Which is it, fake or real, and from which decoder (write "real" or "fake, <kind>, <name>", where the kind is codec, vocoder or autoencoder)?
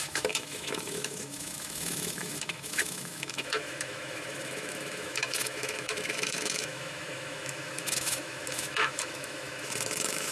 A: fake, autoencoder, DAC-VAE